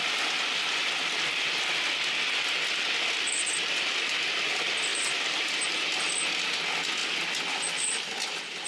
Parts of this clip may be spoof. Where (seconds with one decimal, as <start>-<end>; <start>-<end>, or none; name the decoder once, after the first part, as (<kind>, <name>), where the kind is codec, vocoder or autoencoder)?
4.9-5.4 (vocoder, BigVGAN v2)